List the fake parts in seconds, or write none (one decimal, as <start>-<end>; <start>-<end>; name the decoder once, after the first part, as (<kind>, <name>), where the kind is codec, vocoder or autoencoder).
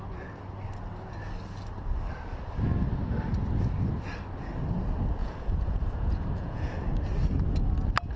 5.2-6.8 (vocoder, Vocos)